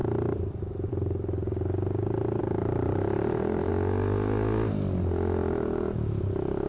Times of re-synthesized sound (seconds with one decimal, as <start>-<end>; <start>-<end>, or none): 2.4-3.7